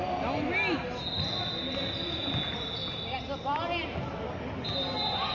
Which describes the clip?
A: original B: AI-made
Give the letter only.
A